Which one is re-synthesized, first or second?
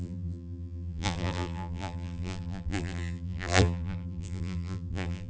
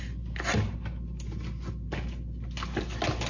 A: first